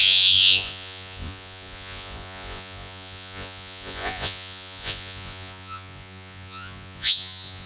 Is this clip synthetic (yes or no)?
yes